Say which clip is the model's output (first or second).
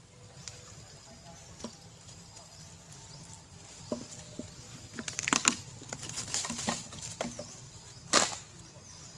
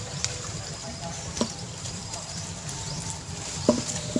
second